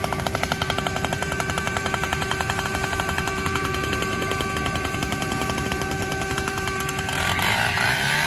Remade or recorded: remade